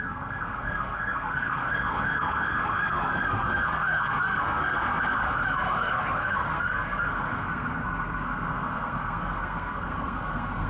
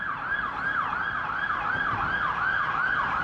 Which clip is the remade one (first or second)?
first